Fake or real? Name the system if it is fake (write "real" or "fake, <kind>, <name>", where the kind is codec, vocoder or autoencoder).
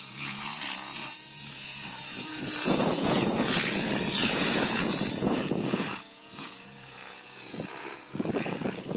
fake, vocoder, Vocos